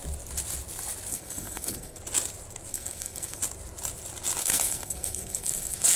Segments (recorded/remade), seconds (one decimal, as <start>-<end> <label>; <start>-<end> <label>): 0.0-1.1 recorded; 1.1-2.0 remade; 2.0-2.7 recorded; 2.7-3.4 remade; 3.4-4.4 recorded; 4.4-6.0 remade